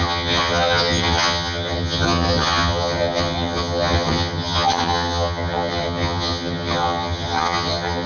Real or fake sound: fake